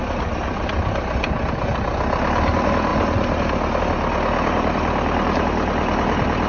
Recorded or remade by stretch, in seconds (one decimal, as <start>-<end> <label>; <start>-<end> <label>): 0.0-6.5 recorded